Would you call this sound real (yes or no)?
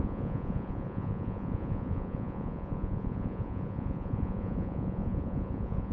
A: no